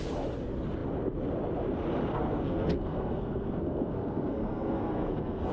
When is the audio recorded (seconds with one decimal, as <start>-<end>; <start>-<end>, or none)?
0.0-2.1